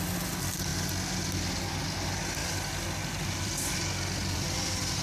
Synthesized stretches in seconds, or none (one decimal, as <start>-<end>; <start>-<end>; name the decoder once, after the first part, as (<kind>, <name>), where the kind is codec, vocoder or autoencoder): 2.4-3.8 (vocoder, BigVGAN v2); 4.2-5.0